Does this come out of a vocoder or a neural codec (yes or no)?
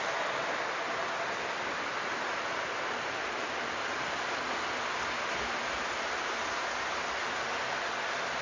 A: no